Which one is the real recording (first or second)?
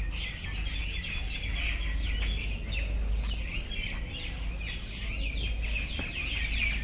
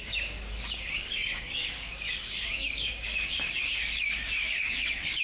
first